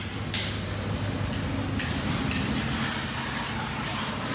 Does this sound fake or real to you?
real